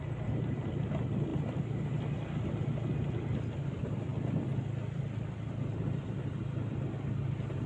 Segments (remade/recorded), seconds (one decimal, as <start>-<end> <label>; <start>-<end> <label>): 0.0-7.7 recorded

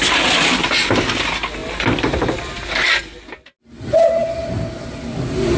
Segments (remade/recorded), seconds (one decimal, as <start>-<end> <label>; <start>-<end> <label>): 0.0-5.6 recorded

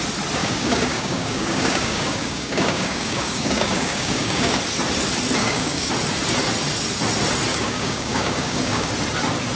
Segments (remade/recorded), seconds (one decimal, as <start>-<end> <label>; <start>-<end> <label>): 0.0-0.4 recorded; 0.4-4.6 remade; 4.6-5.4 recorded; 5.4-5.9 remade; 5.9-7.5 recorded; 7.5-8.9 remade; 8.9-9.6 recorded

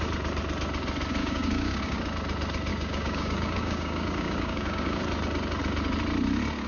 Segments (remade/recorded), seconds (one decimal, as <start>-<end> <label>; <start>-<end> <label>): 0.0-1.2 recorded; 1.2-2.0 remade; 2.0-2.7 recorded; 2.7-5.0 remade; 5.0-6.7 recorded

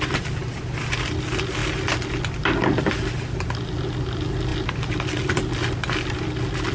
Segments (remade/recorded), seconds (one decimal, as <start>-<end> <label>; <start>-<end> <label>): 0.0-6.7 recorded

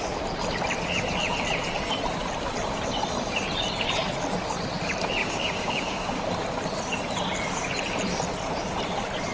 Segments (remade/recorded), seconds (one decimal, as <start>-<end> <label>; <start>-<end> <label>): 0.0-5.2 recorded; 5.2-6.2 remade; 6.2-9.3 recorded